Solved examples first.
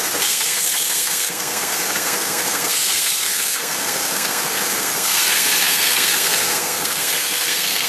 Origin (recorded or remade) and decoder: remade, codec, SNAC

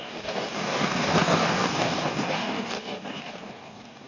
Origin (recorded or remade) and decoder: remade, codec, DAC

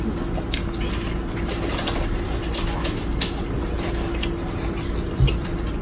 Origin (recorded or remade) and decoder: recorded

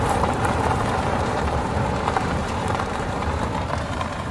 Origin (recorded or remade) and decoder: remade, vocoder, BigVGAN v2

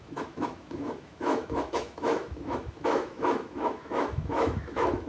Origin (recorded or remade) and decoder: remade, autoencoder, DAC-VAE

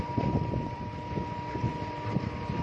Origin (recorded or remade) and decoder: remade, vocoder, BigVGAN v2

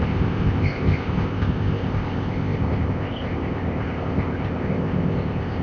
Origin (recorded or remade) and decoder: remade, codec, ZipCodec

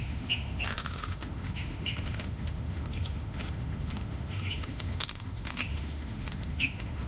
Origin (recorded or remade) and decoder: remade, autoencoder, DAC-VAE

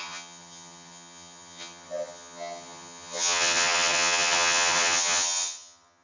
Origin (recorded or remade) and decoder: remade, vocoder, HiFi-GAN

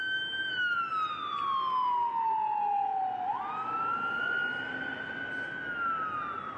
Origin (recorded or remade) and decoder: recorded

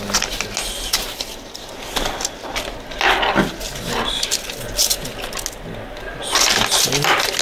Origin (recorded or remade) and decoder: recorded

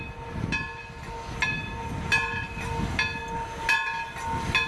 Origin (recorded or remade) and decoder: recorded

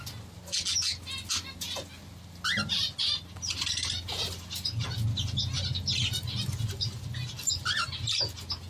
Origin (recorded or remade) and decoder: recorded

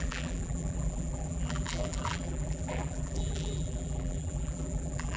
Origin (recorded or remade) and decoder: remade, vocoder, BigVGAN v2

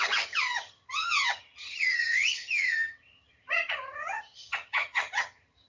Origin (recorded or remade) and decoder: remade, vocoder, HiFi-GAN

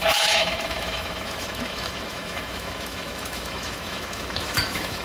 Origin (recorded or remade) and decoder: remade, autoencoder, DAC-VAE